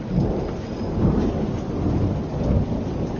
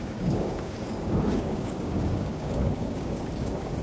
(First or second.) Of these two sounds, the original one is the first